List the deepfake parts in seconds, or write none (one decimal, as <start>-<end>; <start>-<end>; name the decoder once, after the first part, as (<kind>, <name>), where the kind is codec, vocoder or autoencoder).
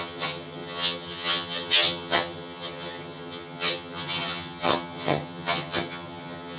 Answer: 0.0-6.6 (vocoder, HiFi-GAN)